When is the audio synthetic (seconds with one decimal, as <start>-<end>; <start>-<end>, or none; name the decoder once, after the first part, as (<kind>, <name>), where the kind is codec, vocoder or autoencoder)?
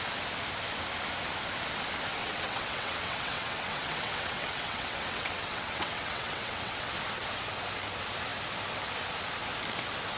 2.2-6.9 (vocoder, WaveNeXt)